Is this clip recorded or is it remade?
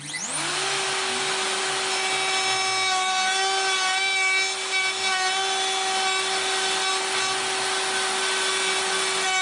recorded